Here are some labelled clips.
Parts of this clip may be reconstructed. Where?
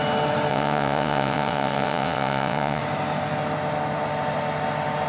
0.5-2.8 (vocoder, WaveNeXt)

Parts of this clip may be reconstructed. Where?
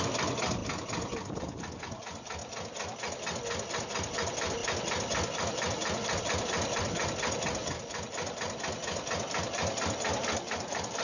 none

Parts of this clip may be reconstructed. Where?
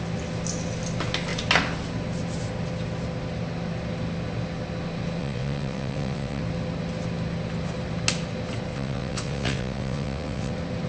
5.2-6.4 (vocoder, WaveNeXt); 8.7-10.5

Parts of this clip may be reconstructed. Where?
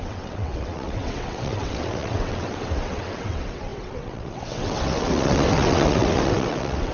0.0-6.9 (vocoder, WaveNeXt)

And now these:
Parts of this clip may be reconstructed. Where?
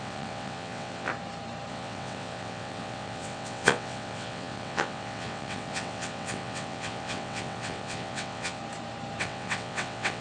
0.0-1.1 (vocoder, WaveNeXt); 1.7-8.6; 9.2-10.2